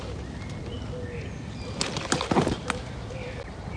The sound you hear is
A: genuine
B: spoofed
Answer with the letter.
A